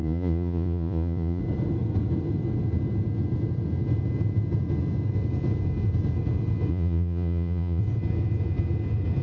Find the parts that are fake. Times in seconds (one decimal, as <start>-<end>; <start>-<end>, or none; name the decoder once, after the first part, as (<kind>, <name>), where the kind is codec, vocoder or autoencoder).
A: 0.0-1.4 (vocoder, Vocos); 6.7-7.8